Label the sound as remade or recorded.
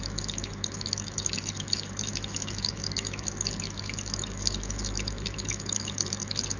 remade